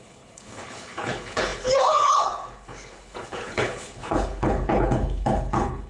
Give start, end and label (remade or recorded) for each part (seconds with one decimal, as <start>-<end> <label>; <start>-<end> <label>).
0.0-5.9 remade